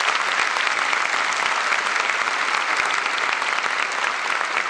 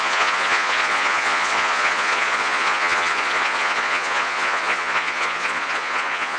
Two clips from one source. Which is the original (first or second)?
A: first